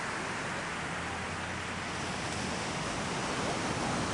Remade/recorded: recorded